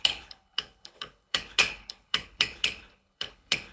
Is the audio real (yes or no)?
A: no